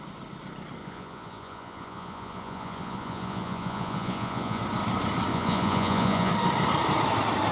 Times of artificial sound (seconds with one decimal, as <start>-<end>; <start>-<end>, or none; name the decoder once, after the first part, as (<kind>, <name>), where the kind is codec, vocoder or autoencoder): 0.8-4.6 (vocoder, Vocos); 5.3-6.3